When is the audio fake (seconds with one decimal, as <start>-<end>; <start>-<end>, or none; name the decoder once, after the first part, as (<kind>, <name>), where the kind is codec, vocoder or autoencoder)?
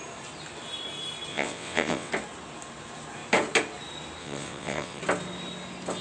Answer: 1.3-2.1 (vocoder, WaveNeXt); 4.2-5.0